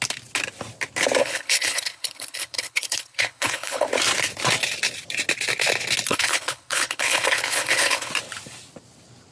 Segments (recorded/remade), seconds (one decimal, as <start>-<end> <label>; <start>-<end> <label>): 0.0-1.2 recorded; 1.2-3.9 remade; 3.9-6.1 recorded; 6.1-8.1 remade; 8.1-9.3 recorded